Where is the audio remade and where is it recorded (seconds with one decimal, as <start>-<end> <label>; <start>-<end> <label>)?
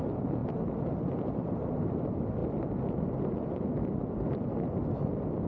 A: 0.0-5.5 recorded